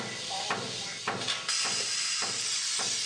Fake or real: real